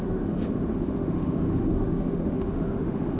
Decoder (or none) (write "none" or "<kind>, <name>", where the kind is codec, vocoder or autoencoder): autoencoder, DAC-VAE